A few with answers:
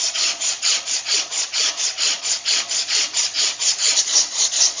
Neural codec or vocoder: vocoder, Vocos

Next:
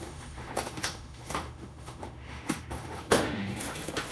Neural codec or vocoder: autoencoder, DAC-VAE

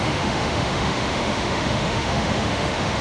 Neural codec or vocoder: autoencoder, DAC-VAE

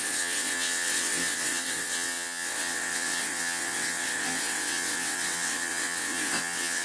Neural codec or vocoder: vocoder, WaveNeXt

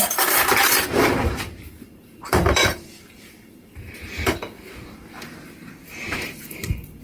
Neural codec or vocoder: vocoder, BigVGAN v2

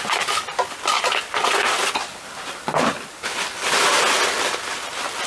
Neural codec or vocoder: none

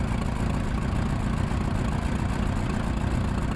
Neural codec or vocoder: none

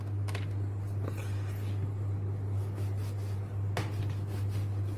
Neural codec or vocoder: none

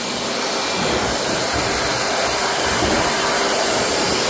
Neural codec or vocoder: vocoder, BigVGAN v2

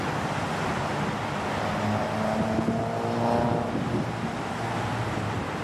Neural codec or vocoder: none